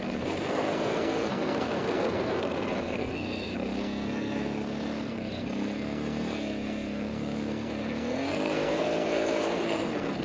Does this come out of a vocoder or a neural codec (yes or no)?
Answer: yes